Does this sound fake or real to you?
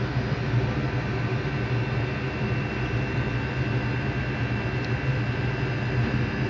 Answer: fake